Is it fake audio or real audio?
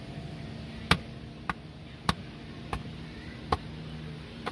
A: fake